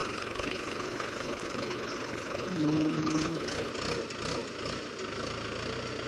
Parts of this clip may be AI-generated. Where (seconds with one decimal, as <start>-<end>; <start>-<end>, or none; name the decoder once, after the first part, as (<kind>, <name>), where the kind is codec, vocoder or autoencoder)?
0.0-3.7 (codec, HILCodec)